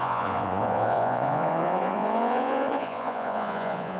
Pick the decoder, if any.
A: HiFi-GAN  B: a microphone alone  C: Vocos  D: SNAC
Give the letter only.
C